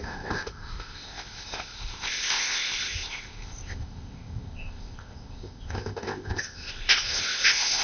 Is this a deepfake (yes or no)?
yes